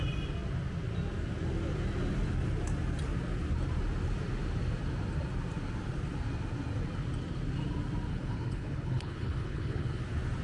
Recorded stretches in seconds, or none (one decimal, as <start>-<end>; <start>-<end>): 0.0-8.1; 10.0-10.4